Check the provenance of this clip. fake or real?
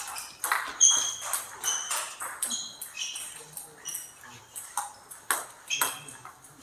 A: real